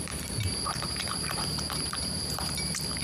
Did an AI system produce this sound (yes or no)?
yes